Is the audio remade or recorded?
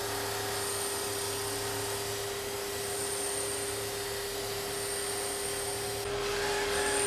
recorded